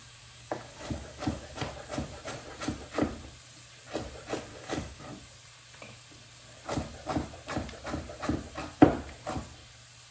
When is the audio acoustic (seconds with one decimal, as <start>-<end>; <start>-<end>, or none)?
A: 1.6-4.5; 5.0-10.1